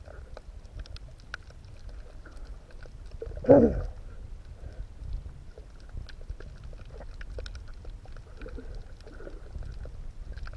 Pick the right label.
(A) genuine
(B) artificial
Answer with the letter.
A